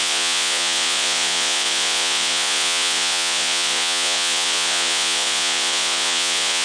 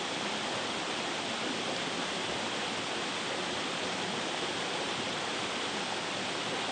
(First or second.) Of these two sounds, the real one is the second